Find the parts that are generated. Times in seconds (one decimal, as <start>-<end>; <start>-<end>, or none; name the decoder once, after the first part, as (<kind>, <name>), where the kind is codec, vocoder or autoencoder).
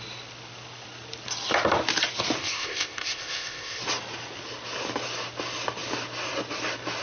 2.4-3.8 (codec, ZipCodec)